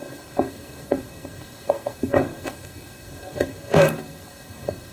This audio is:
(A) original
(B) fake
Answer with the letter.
B